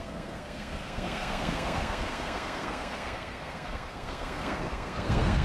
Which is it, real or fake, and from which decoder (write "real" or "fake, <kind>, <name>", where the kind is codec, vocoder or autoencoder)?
fake, codec, SNAC